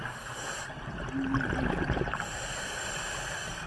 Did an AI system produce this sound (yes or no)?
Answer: no